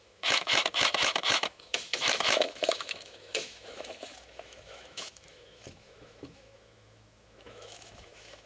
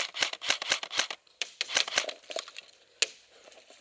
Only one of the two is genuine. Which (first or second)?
second